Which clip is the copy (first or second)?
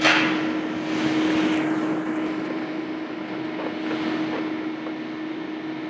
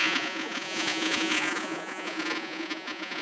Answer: second